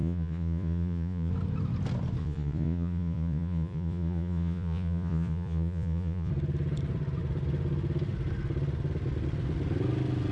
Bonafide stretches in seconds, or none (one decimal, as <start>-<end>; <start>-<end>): 1.3-2.2; 6.3-10.3

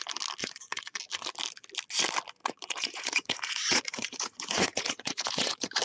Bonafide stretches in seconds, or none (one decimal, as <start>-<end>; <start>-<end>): 0.0-0.4; 1.0-2.4

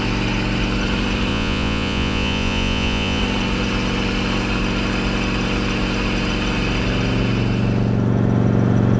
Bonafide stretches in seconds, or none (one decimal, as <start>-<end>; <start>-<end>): 0.0-1.3; 3.2-9.0